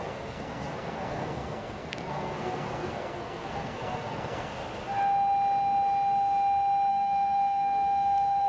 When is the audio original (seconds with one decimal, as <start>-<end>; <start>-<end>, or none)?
4.5-6.9